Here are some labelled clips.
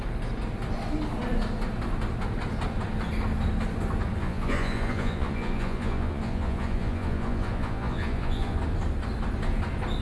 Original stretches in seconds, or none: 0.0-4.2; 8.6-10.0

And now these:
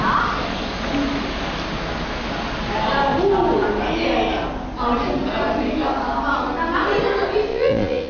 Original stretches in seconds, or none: 0.0-7.5

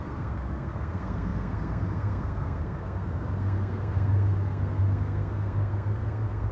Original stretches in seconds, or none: none

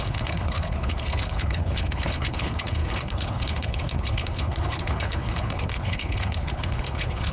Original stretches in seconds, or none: none

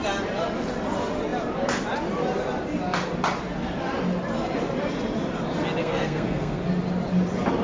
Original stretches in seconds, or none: 0.0-5.8; 6.6-7.6

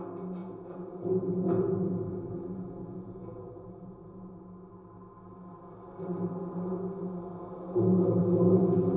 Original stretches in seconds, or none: 0.0-0.4; 4.4-9.0